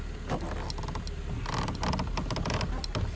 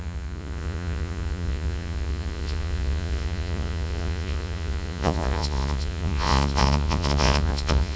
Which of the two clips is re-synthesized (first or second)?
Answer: second